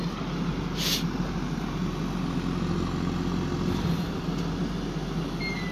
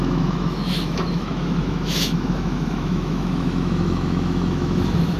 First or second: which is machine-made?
second